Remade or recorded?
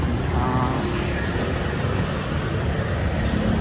recorded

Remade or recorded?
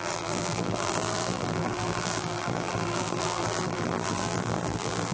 remade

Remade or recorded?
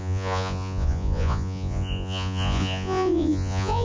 remade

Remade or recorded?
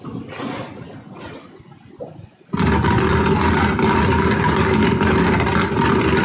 recorded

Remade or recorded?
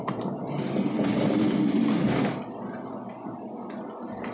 recorded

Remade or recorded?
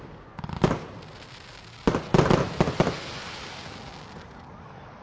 recorded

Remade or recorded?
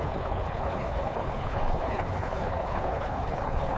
remade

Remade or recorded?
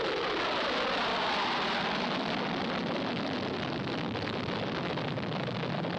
remade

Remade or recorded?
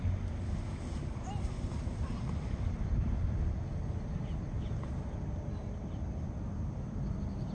recorded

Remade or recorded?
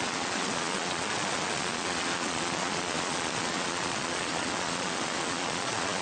remade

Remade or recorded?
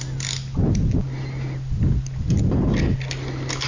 recorded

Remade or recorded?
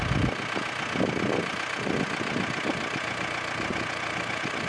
recorded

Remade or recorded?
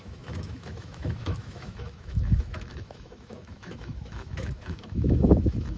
remade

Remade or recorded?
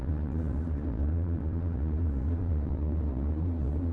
remade